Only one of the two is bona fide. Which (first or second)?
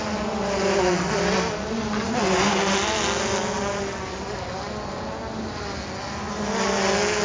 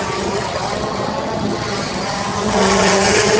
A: first